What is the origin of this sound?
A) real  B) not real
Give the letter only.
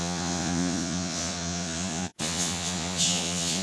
B